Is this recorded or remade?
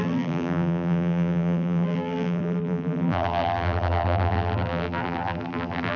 remade